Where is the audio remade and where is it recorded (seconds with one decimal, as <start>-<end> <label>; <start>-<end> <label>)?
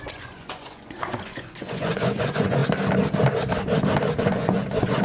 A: 0.0-2.6 remade; 2.6-4.2 recorded; 4.2-5.0 remade